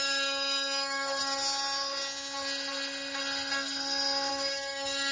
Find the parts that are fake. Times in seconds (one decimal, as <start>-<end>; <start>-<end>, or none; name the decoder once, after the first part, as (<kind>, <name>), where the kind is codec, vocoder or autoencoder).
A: 0.0-1.2 (autoencoder, DAC-VAE); 4.3-5.1